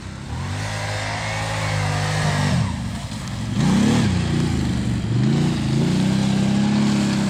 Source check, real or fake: real